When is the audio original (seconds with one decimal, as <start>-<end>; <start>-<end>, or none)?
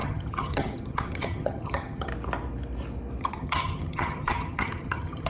2.1-3.2